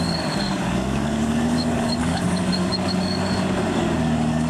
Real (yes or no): no